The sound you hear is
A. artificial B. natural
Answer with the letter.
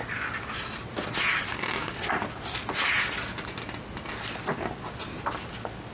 B